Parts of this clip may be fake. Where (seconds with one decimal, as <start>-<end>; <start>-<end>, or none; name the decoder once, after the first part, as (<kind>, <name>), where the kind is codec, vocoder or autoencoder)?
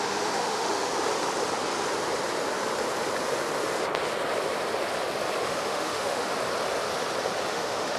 0.0-0.9 (autoencoder, DAC-VAE); 5.4-6.3; 7.5-8.0